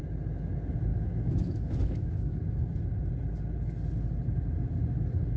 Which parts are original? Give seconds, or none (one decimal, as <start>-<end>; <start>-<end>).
0.0-0.9; 2.4-5.4

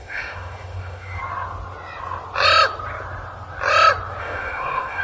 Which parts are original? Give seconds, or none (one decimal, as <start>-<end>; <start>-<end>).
1.2-4.2